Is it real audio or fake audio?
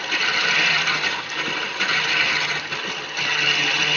real